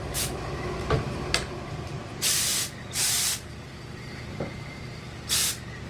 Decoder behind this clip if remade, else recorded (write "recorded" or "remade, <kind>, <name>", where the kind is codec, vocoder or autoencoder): remade, vocoder, BigVGAN v2